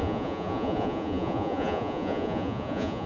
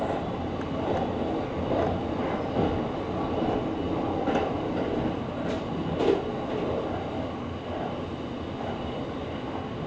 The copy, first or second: first